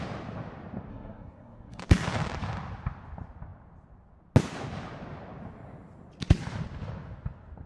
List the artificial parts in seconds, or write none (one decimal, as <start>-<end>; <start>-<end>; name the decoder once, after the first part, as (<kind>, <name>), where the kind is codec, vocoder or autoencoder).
0.9-1.8 (codec, SNAC)